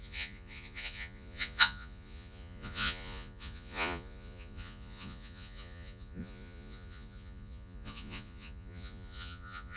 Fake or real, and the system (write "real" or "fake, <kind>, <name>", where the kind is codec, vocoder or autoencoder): fake, vocoder, Vocos